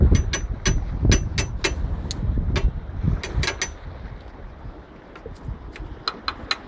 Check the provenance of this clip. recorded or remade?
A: recorded